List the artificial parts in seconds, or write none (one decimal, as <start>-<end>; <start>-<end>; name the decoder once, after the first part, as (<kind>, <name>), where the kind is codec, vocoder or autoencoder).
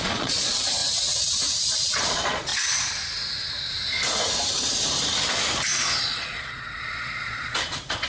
0.0-0.8 (vocoder, Vocos); 1.6-2.5; 6.0-8.1